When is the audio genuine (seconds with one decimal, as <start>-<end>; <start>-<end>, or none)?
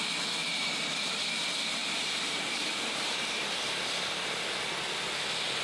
0.0-0.4; 1.2-1.8; 4.6-5.6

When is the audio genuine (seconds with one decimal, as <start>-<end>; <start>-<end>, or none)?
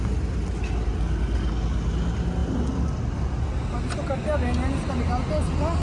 0.0-5.8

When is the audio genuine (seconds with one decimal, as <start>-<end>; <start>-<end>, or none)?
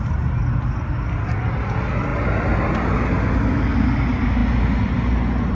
0.0-5.5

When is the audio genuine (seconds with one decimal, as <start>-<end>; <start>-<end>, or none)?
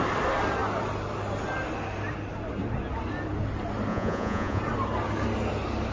0.0-3.9; 4.6-5.9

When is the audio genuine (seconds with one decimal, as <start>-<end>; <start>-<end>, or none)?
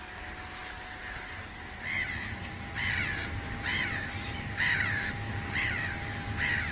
0.0-3.7; 5.1-6.7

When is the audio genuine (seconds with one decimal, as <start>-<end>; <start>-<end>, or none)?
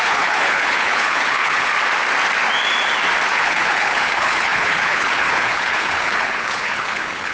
1.7-3.3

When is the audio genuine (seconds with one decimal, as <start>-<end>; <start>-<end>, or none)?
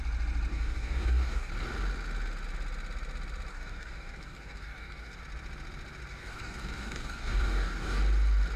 0.0-0.5; 1.5-3.5; 5.2-6.1; 8.0-8.6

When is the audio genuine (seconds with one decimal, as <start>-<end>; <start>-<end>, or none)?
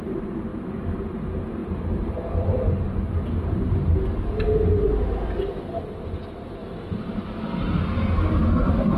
0.0-0.5; 1.0-9.0